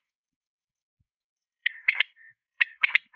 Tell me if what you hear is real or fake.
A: fake